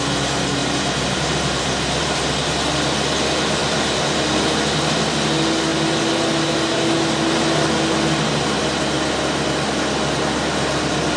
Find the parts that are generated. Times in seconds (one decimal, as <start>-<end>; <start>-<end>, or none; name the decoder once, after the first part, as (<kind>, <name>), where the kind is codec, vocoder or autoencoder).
0.6-2.5 (vocoder, BigVGAN v2); 3.6-4.5